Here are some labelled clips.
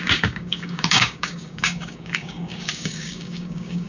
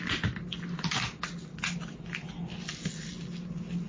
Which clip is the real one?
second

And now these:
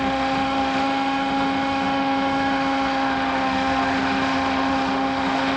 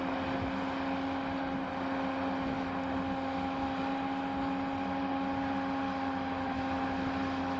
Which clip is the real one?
second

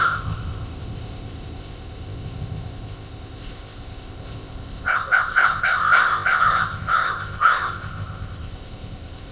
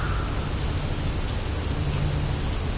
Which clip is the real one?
second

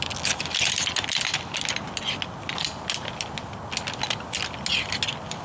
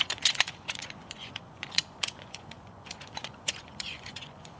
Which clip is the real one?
first